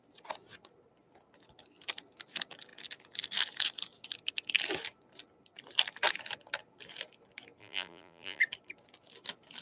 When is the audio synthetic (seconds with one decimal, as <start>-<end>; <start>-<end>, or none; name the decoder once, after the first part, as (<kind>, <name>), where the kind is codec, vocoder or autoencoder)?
7.6-8.4 (vocoder, BigVGAN v2)